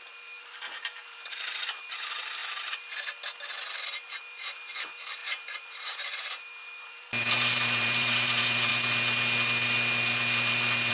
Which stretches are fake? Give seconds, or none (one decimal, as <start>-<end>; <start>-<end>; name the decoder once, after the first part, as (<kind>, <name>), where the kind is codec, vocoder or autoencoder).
0.0-2.4 (vocoder, BigVGAN v2); 4.2-8.7